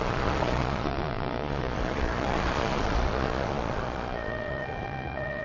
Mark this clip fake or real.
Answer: fake